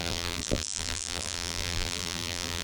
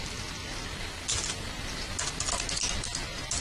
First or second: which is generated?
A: first